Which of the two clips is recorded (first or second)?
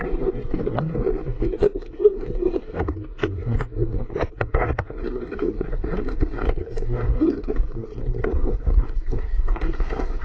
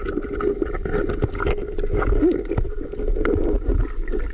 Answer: second